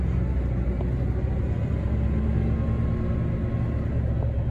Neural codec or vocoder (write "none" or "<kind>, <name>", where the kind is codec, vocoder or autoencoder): none